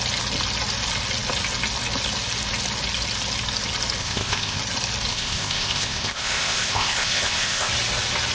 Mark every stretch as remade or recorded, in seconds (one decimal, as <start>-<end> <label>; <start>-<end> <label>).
0.0-4.0 recorded; 4.0-4.6 remade; 4.6-5.1 recorded; 5.1-7.7 remade; 7.7-8.3 recorded